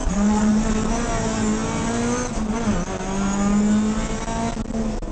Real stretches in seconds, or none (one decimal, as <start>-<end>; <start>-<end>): 0.5-5.1

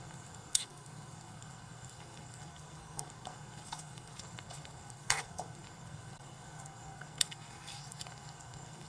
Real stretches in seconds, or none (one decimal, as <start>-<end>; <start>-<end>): none

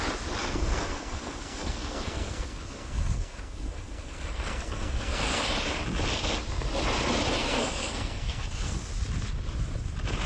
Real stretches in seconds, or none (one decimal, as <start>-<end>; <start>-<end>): 0.0-0.4; 5.4-7.4; 8.9-10.3

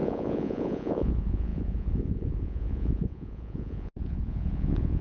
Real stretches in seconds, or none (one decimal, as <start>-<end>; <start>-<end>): none

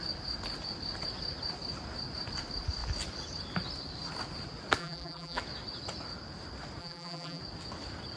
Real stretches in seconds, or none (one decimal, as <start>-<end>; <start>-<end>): 0.0-4.8; 5.4-6.8; 7.4-8.2

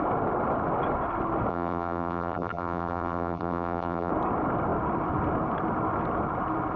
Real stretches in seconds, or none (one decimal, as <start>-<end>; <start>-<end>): 0.0-1.5; 4.1-6.8

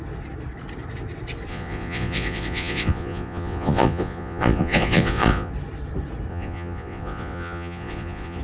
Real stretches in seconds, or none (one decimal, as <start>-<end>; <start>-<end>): 0.0-1.5; 5.5-6.3